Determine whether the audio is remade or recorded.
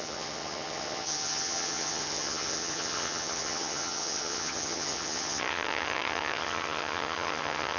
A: remade